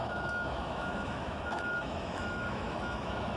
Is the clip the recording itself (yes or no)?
no